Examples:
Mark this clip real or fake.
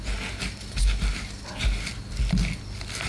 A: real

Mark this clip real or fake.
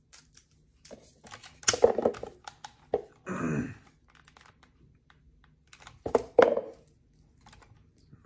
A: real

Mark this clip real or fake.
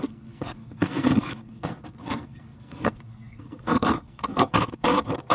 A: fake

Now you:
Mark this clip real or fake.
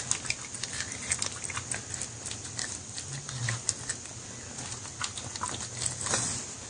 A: real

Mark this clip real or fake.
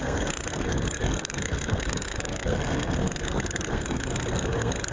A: fake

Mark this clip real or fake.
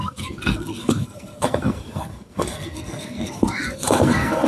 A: fake